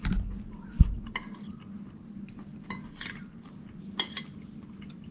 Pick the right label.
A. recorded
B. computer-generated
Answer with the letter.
A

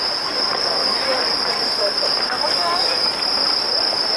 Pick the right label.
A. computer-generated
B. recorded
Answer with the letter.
B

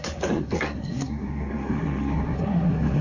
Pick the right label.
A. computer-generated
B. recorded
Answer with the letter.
A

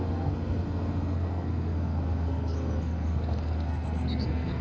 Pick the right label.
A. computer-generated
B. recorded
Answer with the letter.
A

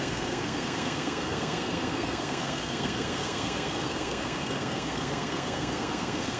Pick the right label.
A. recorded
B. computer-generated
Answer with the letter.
B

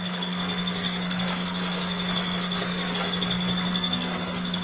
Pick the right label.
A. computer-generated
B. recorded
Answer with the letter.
A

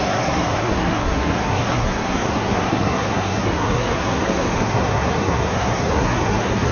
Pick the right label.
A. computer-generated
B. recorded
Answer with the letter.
A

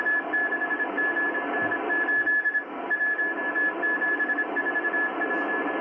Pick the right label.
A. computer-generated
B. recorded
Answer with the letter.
B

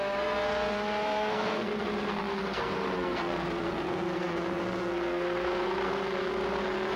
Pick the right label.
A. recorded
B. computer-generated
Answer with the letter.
B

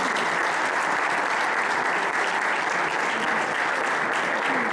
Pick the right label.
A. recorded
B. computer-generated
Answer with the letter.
A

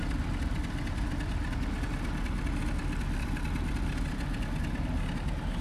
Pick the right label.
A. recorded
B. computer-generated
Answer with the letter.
A